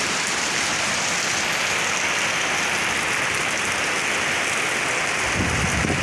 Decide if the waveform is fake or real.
real